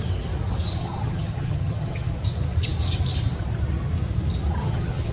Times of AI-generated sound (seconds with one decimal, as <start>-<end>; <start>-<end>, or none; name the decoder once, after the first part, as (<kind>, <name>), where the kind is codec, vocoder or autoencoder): 0.8-2.1 (vocoder, HiFi-GAN); 4.6-5.1